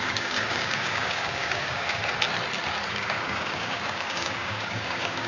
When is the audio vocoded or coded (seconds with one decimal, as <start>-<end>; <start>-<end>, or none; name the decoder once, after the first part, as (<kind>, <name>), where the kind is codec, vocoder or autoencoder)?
0.0-2.0 (codec, DAC); 2.9-5.3